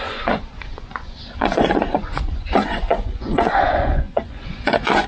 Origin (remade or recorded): remade